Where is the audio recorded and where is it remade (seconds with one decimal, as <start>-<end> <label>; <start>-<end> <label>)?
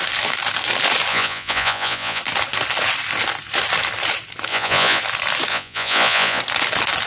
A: 0.0-1.1 recorded; 1.1-2.2 remade; 2.2-4.5 recorded; 4.5-5.0 remade; 5.0-5.5 recorded; 5.5-6.4 remade; 6.4-7.1 recorded